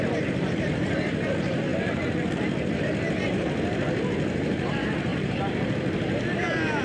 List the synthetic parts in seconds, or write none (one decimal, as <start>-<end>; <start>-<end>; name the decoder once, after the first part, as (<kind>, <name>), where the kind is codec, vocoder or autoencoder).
none